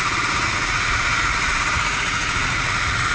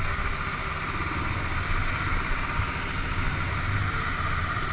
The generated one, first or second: first